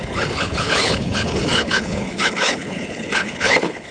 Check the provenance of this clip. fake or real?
fake